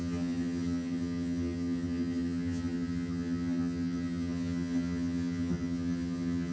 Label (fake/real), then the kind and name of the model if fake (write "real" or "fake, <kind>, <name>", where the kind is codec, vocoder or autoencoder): fake, vocoder, HiFi-GAN